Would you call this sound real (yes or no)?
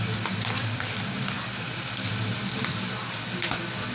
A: no